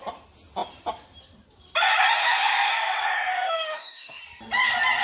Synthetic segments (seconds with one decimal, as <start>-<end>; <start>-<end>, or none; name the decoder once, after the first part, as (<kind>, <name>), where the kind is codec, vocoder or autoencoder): 2.2-2.7 (autoencoder, DAC-VAE); 3.3-4.2